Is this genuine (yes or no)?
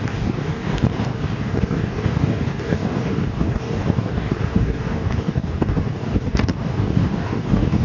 no